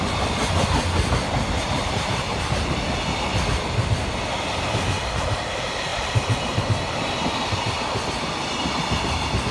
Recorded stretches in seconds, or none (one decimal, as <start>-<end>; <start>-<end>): 0.0-1.6; 2.8-9.5